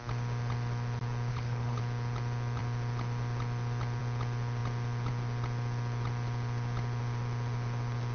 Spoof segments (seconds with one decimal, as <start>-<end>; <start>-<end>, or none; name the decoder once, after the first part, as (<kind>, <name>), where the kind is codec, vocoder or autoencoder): 1.3-1.8 (codec, HILCodec)